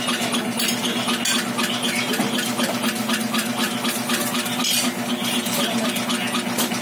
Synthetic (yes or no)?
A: no